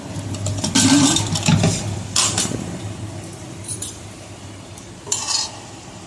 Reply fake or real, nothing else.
fake